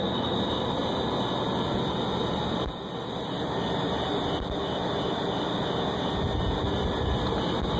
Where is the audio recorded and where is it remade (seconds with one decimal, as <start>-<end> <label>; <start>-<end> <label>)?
0.0-7.8 recorded